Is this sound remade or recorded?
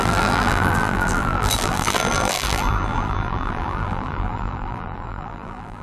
remade